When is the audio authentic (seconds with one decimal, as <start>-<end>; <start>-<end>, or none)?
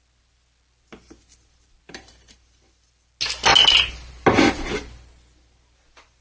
0.0-6.2